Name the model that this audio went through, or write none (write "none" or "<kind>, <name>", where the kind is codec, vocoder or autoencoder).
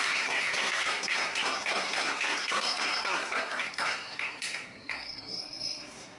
codec, SNAC